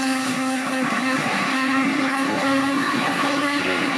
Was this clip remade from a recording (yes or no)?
yes